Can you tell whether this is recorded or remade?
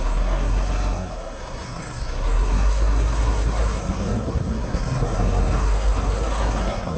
remade